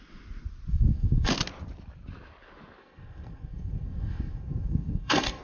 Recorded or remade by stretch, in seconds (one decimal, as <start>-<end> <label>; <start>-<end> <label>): 0.0-0.7 recorded; 0.7-1.3 remade; 1.3-2.8 recorded; 2.8-5.4 remade